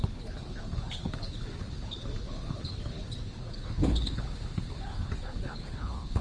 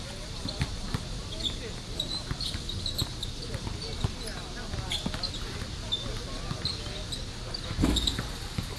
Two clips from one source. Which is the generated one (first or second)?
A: first